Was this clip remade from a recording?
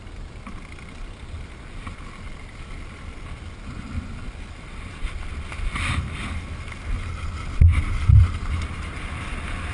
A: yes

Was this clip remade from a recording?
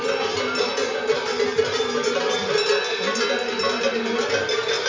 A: no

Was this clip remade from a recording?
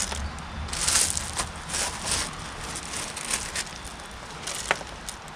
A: no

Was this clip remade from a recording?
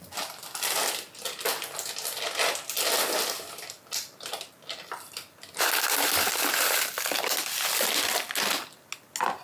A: no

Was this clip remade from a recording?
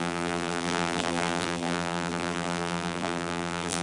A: yes